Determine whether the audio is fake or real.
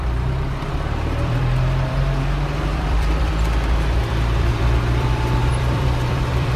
fake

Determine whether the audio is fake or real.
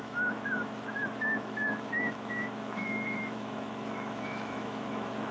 fake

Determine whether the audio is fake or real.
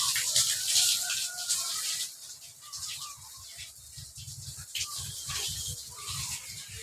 real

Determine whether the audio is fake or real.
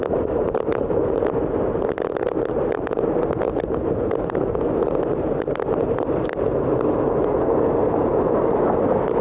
real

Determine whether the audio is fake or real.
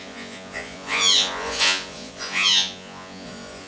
fake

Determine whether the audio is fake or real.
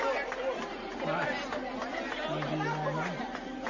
real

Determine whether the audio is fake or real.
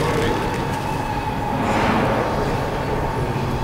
fake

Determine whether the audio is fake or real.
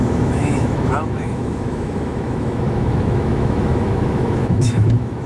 fake